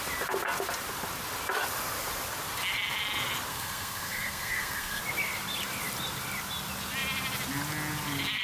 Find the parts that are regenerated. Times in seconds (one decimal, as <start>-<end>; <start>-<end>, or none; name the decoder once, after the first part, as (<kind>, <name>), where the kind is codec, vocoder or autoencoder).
3.5-5.0 (codec, SNAC)

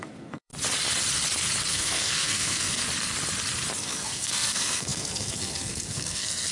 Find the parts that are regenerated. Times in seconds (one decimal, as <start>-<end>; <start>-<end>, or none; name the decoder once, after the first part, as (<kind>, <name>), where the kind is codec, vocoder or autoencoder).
0.0-0.5 (codec, SNAC); 1.7-2.8; 3.8-6.5

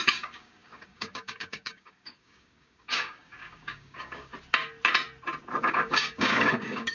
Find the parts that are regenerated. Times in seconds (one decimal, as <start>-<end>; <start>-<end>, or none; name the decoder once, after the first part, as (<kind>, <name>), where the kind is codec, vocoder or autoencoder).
0.0-4.3 (codec, DAC); 5.6-6.9

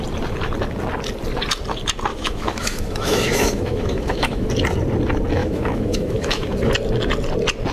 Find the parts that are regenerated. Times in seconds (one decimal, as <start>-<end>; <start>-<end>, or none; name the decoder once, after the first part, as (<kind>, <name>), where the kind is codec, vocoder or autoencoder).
2.1-4.5 (autoencoder, DAC-VAE); 5.4-6.5

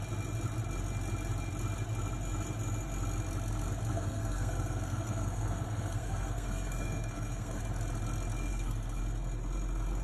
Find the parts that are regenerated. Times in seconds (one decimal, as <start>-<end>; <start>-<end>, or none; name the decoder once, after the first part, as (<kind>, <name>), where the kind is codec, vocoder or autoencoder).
3.9-7.6 (codec, SNAC); 8.5-9.0

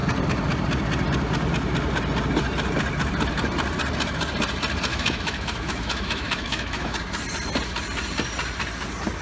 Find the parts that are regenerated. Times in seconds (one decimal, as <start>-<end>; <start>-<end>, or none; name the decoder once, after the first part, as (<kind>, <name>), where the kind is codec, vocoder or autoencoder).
4.9-7.0 (autoencoder, DAC-VAE)

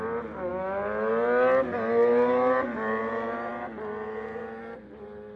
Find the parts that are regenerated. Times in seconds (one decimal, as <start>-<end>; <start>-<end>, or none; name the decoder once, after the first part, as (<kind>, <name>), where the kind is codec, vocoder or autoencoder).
0.5-1.1 (codec, DAC)